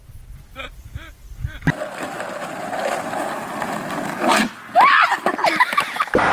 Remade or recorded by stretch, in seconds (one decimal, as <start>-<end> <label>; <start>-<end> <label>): 0.0-6.3 recorded